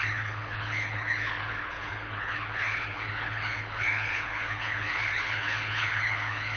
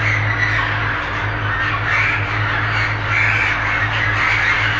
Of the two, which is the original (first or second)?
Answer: second